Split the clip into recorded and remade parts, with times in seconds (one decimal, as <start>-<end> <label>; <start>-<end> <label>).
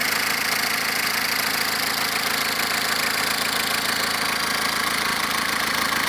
0.0-6.1 recorded